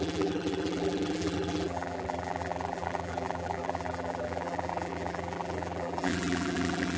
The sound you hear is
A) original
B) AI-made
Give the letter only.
B